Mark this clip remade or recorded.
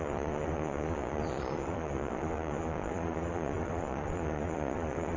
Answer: remade